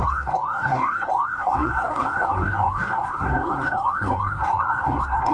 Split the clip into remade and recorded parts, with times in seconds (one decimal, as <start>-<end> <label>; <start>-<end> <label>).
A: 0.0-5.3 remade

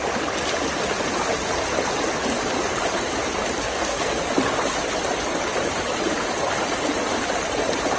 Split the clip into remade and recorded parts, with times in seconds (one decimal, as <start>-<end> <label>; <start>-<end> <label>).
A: 0.0-3.6 recorded; 3.6-4.3 remade; 4.3-8.0 recorded

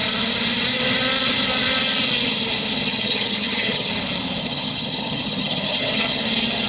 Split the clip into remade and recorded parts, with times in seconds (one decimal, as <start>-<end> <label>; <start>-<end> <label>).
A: 0.0-2.9 recorded; 2.9-3.9 remade; 3.9-4.4 recorded; 4.4-6.2 remade; 6.2-6.7 recorded